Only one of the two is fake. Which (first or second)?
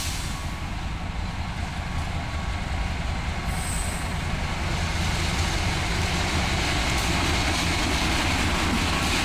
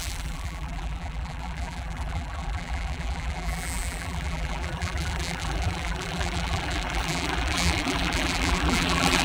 second